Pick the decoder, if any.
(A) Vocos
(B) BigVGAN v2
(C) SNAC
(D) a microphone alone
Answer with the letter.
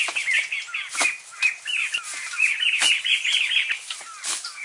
D